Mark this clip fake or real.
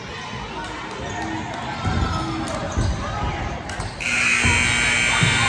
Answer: real